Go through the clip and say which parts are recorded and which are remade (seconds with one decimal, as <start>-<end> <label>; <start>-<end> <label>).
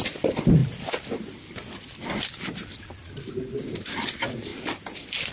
0.0-5.3 recorded